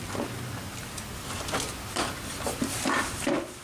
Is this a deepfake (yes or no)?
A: no